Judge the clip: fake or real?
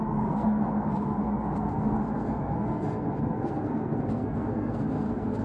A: fake